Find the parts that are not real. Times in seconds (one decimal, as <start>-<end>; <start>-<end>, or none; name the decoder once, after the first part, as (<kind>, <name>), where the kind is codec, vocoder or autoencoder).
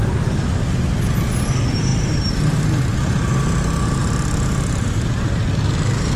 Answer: 1.9-2.4 (vocoder, BigVGAN v2)